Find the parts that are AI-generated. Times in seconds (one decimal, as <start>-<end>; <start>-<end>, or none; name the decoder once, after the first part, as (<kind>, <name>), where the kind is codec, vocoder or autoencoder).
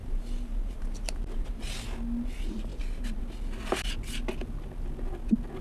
0.0-1.6 (vocoder, BigVGAN v2); 2.7-3.2